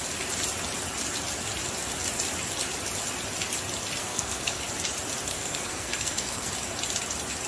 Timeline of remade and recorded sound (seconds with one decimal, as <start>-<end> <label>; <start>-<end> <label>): 0.0-4.0 recorded; 4.0-4.6 remade; 4.6-5.3 recorded; 5.3-6.5 remade; 6.5-7.5 recorded